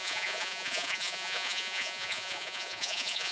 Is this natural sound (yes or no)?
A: no